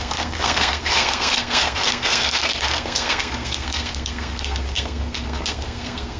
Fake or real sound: fake